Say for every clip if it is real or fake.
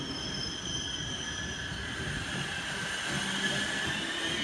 real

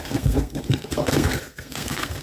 fake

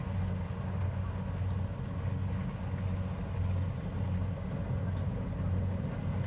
real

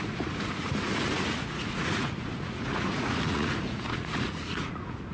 fake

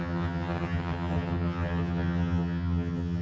fake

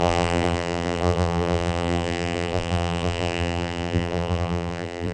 fake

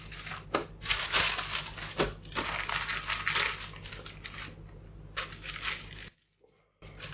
real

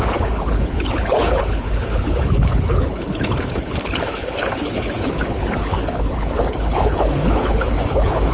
fake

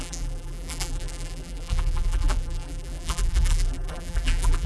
fake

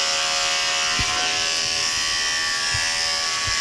real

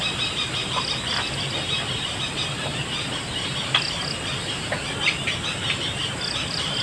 real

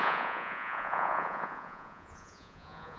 fake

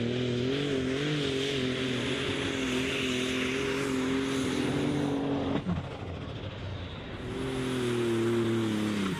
real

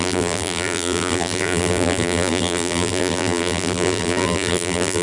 fake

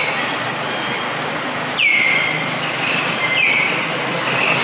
real